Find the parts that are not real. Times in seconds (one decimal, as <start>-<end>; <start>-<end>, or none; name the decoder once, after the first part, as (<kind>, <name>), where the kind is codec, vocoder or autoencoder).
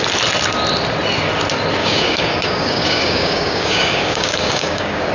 1.8-5.1 (codec, DAC)